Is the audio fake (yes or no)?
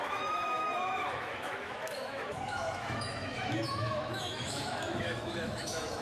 yes